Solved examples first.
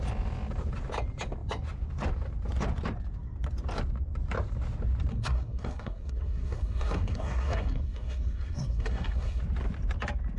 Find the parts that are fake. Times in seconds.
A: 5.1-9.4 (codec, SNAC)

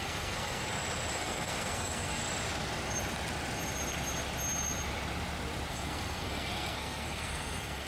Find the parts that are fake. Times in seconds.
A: 0.0-0.6 (codec, SNAC); 1.1-2.2; 5.7-7.9